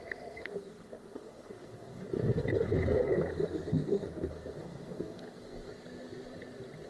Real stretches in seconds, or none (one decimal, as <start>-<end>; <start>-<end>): 5.7-6.9